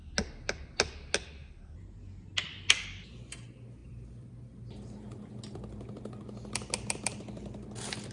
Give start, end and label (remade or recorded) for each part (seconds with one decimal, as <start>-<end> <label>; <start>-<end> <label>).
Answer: 0.0-3.8 recorded; 3.8-4.3 remade; 4.3-8.1 recorded